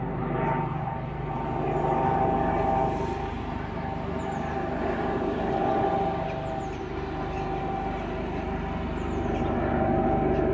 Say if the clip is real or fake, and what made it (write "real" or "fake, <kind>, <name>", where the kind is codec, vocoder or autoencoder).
real